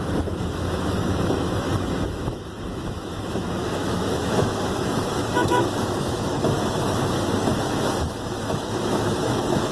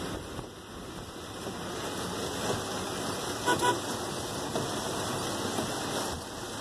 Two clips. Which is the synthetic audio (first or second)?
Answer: first